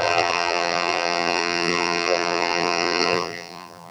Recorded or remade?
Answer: remade